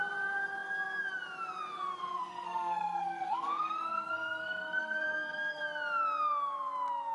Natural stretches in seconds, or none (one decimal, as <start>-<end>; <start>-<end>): 0.0-2.0; 5.6-7.1